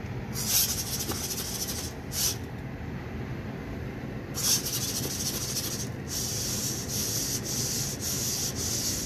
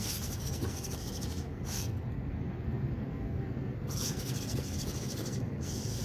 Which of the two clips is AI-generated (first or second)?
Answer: second